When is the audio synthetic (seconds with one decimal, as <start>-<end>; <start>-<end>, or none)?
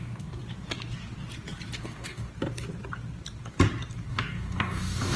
0.0-0.4; 1.8-2.3; 4.1-5.2